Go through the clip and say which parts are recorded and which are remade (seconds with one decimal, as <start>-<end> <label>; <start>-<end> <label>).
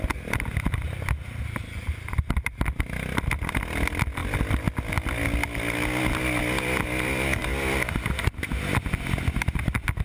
0.0-10.0 recorded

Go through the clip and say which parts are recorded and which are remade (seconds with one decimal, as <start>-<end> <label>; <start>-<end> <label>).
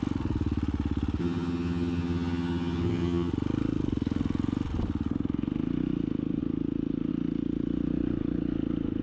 0.0-1.2 recorded; 1.2-3.3 remade; 3.3-9.0 recorded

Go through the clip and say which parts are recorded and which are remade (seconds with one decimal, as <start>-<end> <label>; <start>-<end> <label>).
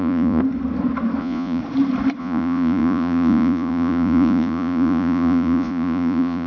0.0-0.4 remade; 0.4-1.2 recorded; 1.2-1.6 remade; 1.6-2.2 recorded; 2.2-6.5 remade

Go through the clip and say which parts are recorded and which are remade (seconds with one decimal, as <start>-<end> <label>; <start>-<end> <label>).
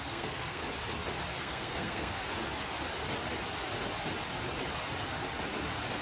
0.0-0.6 remade; 0.6-1.4 recorded; 1.4-2.2 remade; 2.2-6.0 recorded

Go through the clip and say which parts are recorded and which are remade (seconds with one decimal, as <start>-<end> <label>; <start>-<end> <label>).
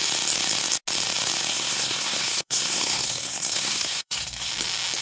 0.0-1.5 recorded; 1.5-4.5 remade; 4.5-5.0 recorded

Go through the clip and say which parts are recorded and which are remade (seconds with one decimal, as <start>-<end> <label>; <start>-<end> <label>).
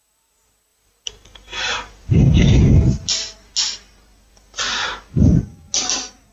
0.0-0.7 recorded; 0.7-2.7 remade; 2.7-6.3 recorded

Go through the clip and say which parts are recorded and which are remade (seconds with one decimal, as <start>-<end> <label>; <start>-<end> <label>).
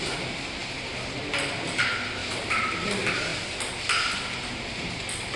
0.0-2.2 recorded; 2.2-2.9 remade; 2.9-5.4 recorded